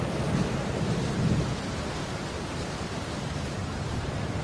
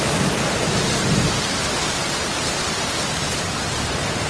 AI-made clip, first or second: first